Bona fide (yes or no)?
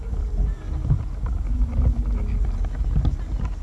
yes